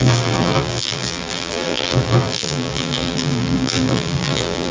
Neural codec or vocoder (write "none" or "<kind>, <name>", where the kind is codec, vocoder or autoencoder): vocoder, BigVGAN v2